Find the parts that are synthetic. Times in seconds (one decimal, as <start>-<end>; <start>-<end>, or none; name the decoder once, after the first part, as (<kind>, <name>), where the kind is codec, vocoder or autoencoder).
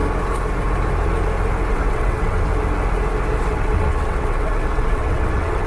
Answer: 1.7-2.5 (vocoder, WaveNeXt); 3.4-5.7